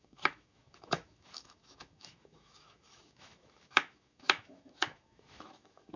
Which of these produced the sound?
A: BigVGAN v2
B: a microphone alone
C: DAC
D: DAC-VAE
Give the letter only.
D